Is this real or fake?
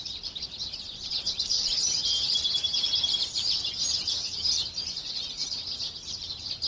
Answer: fake